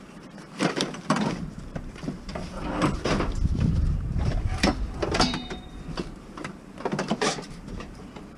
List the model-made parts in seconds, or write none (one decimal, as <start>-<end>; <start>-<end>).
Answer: 0.0-2.3; 3.8-8.4